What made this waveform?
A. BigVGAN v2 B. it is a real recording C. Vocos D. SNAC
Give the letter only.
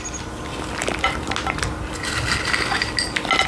B